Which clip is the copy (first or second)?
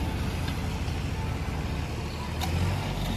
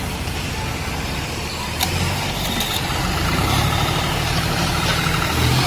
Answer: second